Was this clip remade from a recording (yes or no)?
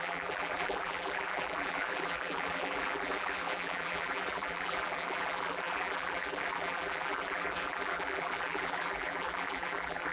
yes